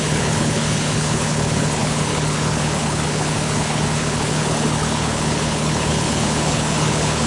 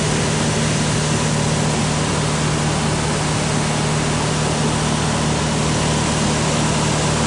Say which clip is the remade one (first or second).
first